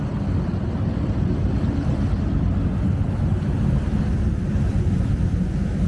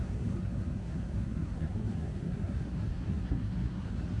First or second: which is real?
first